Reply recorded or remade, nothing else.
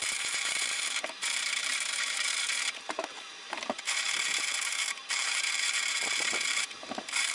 remade